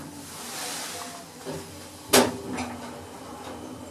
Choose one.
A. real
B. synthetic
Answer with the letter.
A